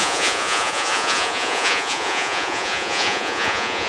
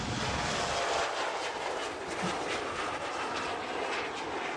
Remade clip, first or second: first